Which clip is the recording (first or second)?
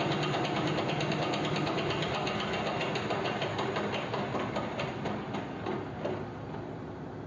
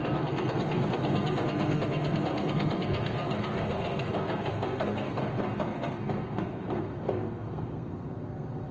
first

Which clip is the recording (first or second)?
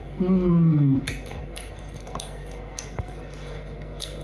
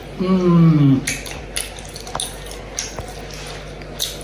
second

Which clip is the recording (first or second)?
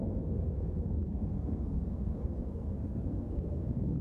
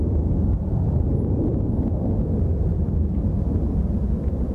second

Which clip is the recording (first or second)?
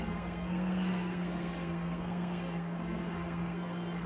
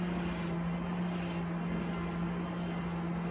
second